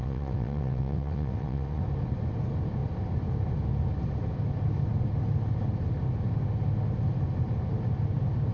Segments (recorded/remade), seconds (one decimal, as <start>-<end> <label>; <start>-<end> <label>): 0.0-1.8 remade; 1.8-8.5 recorded